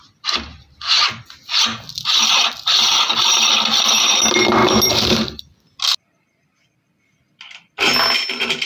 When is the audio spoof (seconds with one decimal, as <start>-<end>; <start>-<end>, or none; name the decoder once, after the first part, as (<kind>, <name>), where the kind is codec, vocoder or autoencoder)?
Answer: 4.6-5.6 (vocoder, BigVGAN v2)